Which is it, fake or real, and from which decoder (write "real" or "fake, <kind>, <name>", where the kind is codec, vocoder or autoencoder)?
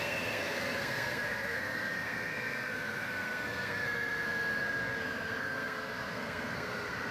fake, codec, SNAC